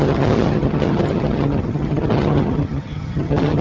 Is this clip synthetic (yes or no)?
yes